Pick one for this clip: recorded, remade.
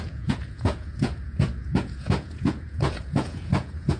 remade